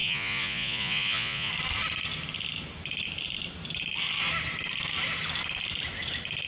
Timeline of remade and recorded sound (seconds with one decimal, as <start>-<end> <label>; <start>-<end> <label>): 0.0-1.5 remade; 1.5-6.5 recorded